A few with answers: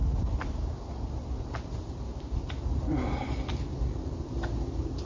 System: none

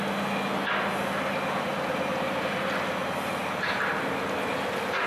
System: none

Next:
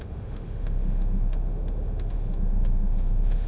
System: autoencoder, DAC-VAE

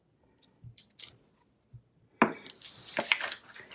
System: none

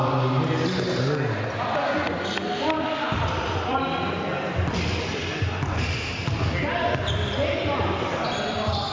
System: none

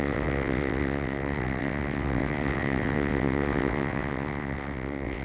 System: vocoder, WaveNeXt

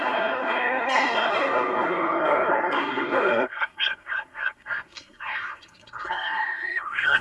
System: codec, SNAC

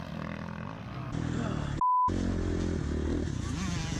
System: none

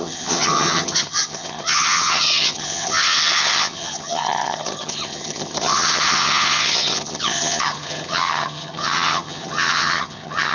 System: vocoder, HiFi-GAN